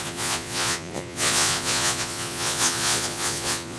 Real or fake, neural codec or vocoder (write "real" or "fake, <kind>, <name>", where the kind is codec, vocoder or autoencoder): fake, vocoder, Vocos